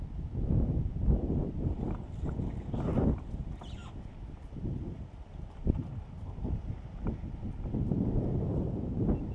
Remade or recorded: recorded